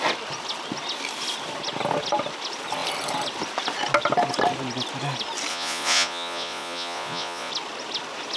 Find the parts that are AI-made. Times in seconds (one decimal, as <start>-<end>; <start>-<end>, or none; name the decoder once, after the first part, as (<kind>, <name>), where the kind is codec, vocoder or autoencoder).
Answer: 5.5-7.5 (vocoder, Vocos)